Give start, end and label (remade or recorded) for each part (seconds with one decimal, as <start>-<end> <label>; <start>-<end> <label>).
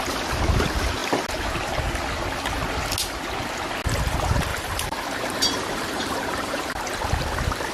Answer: 0.0-4.5 recorded; 4.5-6.8 remade; 6.8-7.7 recorded